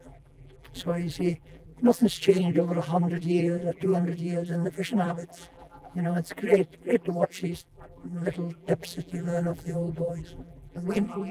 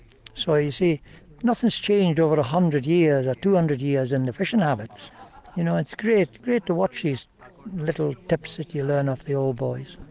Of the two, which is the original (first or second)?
second